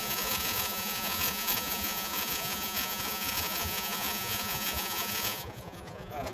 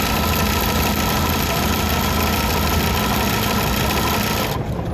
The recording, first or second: second